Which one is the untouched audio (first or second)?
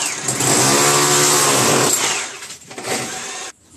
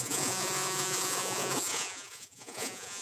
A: first